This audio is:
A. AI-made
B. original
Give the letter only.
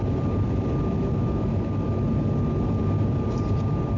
B